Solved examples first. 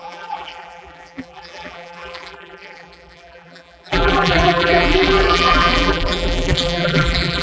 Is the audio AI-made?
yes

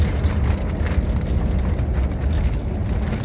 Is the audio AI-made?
no